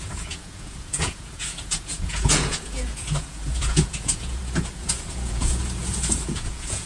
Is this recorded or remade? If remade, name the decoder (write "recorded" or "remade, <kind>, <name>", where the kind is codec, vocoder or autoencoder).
remade, vocoder, Vocos